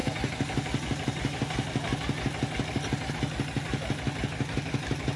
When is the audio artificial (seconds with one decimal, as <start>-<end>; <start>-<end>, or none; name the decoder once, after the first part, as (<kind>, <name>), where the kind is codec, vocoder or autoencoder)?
none